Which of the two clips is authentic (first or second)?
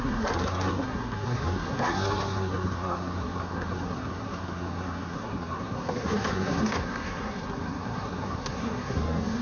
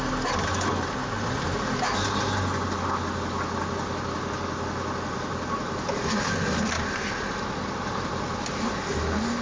second